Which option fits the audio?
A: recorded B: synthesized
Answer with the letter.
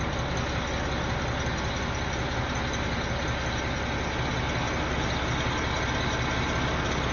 A